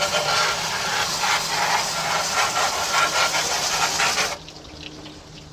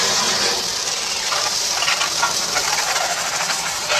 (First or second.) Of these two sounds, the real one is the first